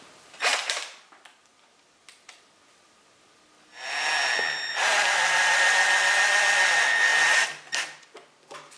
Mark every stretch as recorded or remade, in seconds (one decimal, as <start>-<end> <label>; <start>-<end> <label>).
0.0-8.8 recorded